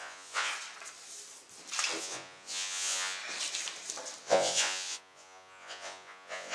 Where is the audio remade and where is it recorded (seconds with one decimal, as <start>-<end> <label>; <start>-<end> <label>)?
0.0-0.5 remade; 0.5-2.0 recorded; 2.0-3.2 remade; 3.2-4.2 recorded; 4.2-6.5 remade